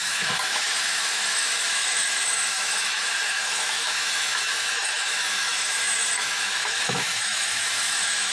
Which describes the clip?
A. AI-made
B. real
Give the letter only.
A